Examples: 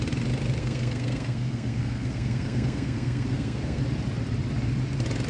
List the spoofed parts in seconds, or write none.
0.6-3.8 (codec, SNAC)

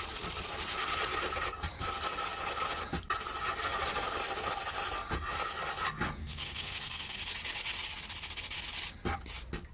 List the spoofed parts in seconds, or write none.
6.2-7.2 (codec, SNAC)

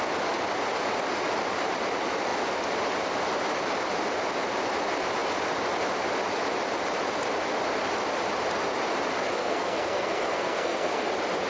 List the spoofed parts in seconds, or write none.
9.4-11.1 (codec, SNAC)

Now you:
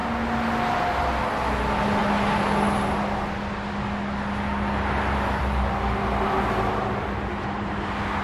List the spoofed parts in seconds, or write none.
none

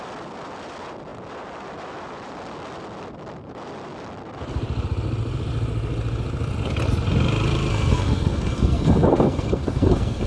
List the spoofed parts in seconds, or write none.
7.7-10.3 (codec, SNAC)

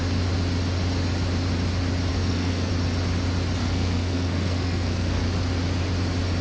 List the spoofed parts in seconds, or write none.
2.1-2.7 (codec, SNAC); 3.6-5.2

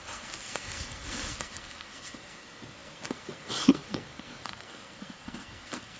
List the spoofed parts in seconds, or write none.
0.0-6.0 (codec, SNAC)